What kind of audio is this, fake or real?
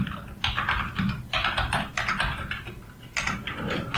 fake